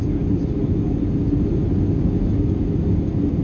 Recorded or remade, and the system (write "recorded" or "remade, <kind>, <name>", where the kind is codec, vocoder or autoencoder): recorded